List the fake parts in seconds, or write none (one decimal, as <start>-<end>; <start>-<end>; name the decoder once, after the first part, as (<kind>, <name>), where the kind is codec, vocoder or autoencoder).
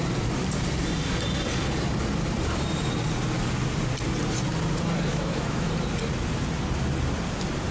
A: 5.1-5.7 (autoencoder, DAC-VAE)